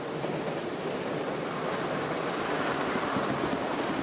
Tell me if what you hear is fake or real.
real